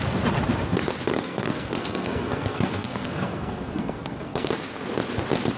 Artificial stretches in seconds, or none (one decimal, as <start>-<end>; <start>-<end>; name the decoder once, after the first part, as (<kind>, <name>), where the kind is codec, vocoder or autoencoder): 1.1-4.5 (codec, SNAC)